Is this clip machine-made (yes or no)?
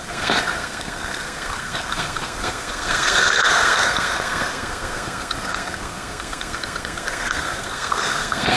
yes